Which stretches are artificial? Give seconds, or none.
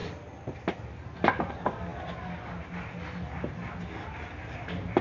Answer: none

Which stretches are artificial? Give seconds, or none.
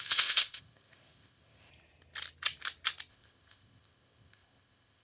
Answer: 0.0-1.7; 3.1-5.0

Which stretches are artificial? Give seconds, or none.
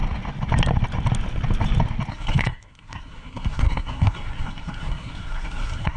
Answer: 2.1-6.0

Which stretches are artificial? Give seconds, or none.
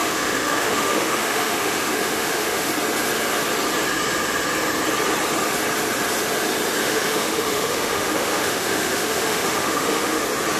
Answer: 0.0-2.7; 6.8-10.2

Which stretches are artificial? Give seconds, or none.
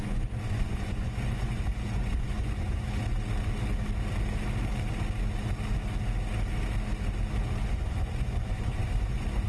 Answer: 0.0-3.0; 7.7-9.5